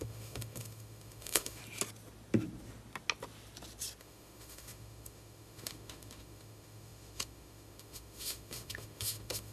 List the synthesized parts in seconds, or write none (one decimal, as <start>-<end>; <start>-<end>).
0.0-1.6; 4.0-9.5